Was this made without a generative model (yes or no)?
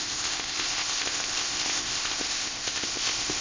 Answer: no